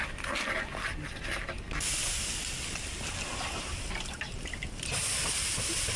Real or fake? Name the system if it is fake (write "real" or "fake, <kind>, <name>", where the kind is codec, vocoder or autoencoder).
real